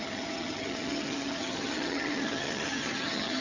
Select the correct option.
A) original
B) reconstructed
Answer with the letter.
B